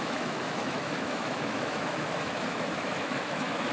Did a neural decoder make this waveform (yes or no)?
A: yes